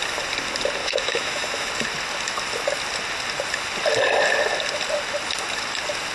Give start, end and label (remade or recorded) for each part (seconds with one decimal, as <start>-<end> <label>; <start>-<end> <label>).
0.0-0.8 recorded; 0.8-1.7 remade; 1.7-6.1 recorded